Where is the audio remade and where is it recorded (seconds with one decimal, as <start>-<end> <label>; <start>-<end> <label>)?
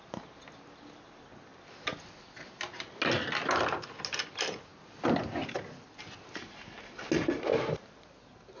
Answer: 0.0-8.6 recorded